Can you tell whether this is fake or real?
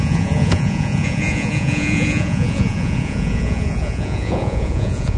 fake